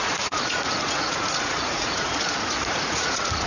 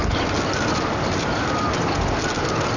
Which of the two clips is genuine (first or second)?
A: second